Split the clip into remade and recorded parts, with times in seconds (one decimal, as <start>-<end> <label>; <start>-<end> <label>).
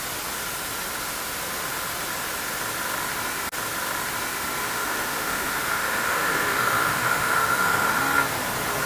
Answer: 0.0-4.6 recorded; 4.6-8.0 remade; 8.0-8.9 recorded